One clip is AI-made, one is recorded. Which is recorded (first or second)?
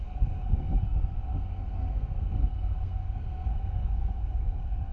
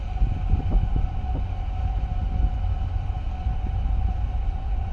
second